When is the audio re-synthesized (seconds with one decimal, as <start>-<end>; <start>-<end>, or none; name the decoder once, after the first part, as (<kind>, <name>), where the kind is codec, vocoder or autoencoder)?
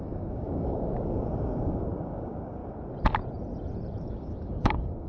0.0-2.6 (codec, DAC); 4.0-5.1